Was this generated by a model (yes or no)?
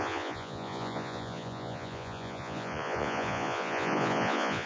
yes